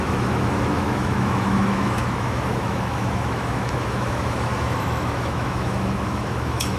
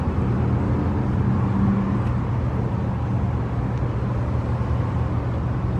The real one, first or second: second